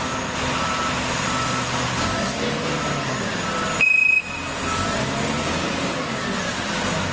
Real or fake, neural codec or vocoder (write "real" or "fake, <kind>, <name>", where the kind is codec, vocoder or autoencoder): real